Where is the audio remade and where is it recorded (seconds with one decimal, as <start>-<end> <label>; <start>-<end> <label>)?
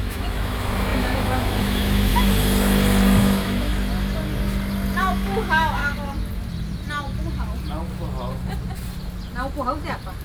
0.0-2.1 remade; 2.1-3.2 recorded; 3.2-3.7 remade; 3.7-5.0 recorded; 5.0-5.8 remade; 5.8-10.2 recorded